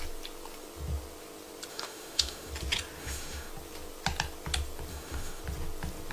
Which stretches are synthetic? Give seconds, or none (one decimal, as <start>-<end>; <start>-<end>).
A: 1.7-2.5; 3.0-3.5; 4.9-5.4